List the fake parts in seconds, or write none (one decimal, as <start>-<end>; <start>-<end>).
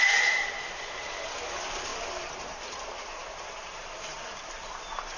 0.0-1.9; 2.5-5.2